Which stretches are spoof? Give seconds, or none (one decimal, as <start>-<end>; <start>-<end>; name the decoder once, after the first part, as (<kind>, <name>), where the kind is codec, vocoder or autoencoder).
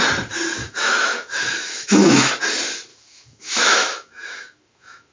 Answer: 0.6-2.3 (autoencoder, DAC-VAE); 2.9-5.1